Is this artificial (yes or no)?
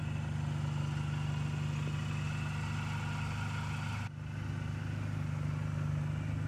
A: no